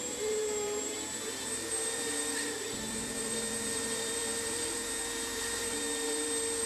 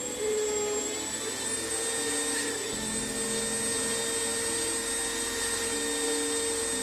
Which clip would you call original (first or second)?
second